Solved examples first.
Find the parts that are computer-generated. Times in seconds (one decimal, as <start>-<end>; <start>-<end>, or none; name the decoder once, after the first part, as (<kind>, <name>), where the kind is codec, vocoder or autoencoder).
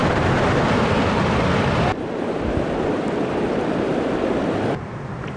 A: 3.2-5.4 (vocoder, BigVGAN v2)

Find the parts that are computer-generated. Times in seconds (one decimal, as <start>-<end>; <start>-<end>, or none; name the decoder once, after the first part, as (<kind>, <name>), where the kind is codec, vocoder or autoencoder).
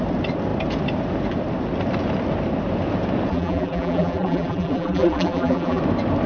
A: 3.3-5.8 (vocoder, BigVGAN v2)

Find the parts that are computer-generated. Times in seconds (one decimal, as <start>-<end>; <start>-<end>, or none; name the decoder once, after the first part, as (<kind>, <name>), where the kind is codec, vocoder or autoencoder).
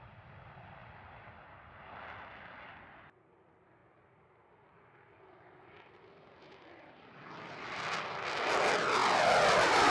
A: none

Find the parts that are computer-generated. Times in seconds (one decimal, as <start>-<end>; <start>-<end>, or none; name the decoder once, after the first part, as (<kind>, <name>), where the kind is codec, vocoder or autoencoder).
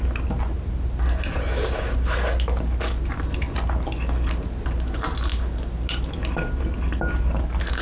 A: none